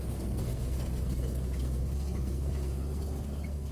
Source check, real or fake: fake